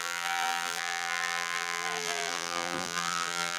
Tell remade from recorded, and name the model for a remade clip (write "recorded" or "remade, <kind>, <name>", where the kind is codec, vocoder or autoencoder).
remade, vocoder, BigVGAN v2